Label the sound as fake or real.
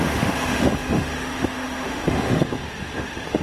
fake